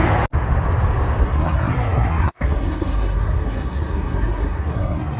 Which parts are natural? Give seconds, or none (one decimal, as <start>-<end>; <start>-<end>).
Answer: 0.0-1.2